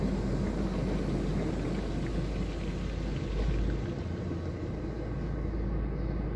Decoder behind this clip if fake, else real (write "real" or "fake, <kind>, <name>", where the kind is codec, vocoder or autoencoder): real